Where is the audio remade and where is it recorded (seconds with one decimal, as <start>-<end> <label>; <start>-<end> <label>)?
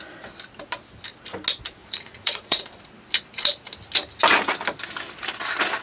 0.0-1.8 recorded; 1.8-2.9 remade; 2.9-5.8 recorded